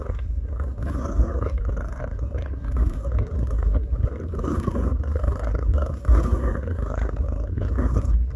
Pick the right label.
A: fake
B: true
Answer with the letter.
A